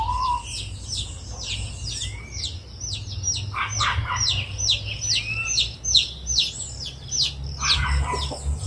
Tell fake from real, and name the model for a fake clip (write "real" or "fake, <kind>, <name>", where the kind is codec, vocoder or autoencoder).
real